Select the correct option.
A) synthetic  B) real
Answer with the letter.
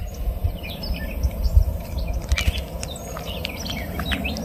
B